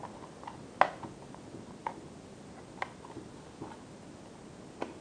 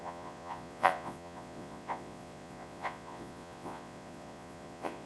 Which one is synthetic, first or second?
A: second